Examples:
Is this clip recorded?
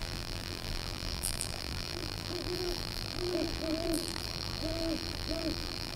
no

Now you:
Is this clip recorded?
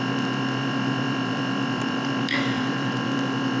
no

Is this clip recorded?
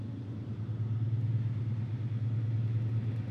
yes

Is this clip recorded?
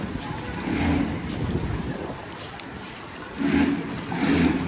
yes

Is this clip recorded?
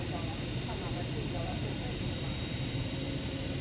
yes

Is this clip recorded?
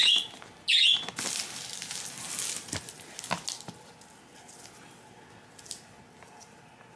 yes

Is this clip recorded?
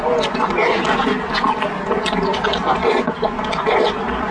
yes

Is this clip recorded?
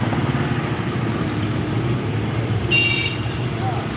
yes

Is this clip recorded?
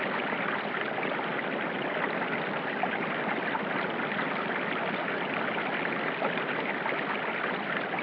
yes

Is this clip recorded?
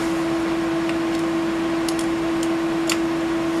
yes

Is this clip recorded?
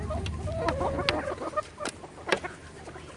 yes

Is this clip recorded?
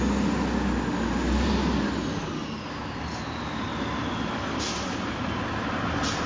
yes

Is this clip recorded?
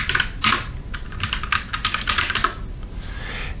yes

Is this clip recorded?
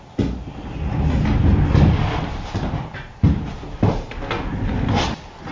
yes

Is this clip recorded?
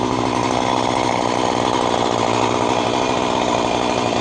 yes